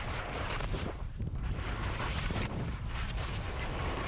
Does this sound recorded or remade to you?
remade